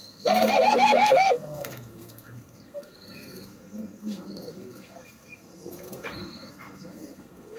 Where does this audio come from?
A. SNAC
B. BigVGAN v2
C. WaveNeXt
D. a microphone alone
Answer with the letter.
A